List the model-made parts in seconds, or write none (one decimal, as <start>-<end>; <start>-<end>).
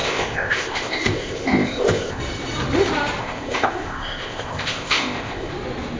0.0-2.2; 3.2-5.5